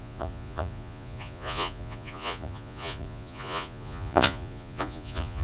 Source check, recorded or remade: remade